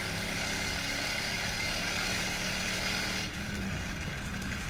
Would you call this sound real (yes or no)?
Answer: no